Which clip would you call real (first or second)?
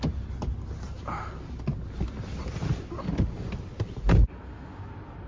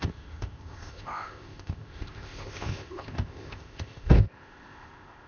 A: first